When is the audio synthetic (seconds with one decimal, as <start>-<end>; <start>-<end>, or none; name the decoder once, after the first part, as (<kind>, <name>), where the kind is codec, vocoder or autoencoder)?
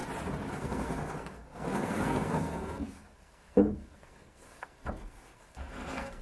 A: 0.5-6.2 (codec, SNAC)